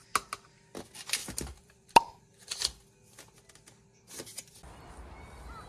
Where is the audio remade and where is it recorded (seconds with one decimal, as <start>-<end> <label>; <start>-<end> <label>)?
0.0-1.2 recorded; 1.2-2.2 remade; 2.2-5.7 recorded